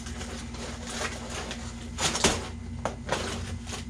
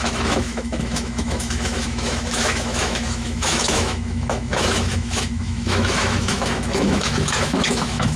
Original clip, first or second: first